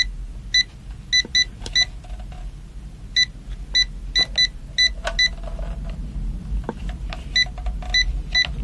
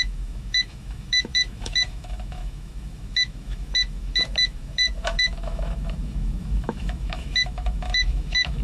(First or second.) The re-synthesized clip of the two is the second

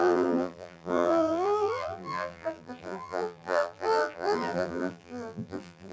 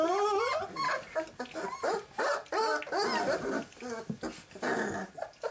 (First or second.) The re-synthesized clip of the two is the first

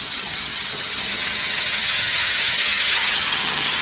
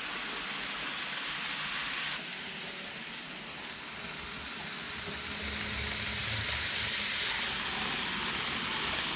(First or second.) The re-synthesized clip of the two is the first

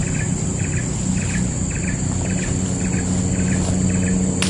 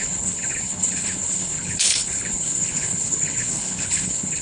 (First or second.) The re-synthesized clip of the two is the second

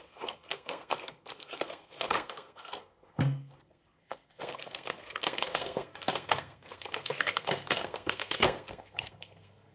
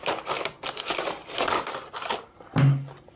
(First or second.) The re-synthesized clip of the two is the first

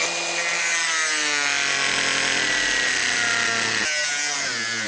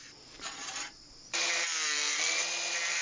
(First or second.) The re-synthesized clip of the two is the second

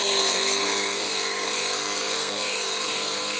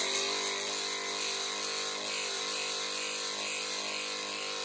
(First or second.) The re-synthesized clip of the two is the first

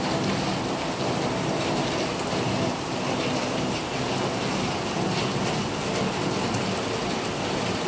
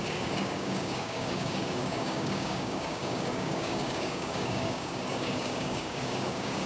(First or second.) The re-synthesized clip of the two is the second